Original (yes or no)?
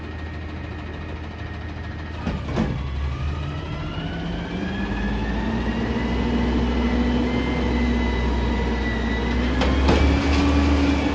yes